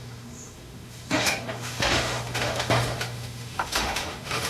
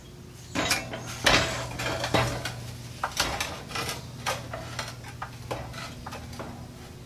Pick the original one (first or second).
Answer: second